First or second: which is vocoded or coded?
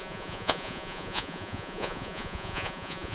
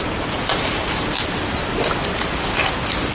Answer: first